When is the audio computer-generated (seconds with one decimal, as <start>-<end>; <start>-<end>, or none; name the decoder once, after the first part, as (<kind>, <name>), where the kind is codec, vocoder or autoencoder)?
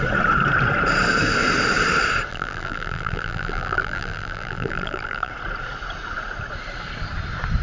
2.3-5.3 (vocoder, BigVGAN v2)